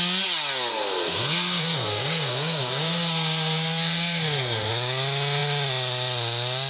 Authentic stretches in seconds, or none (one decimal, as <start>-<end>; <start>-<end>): 0.0-0.7; 4.7-6.7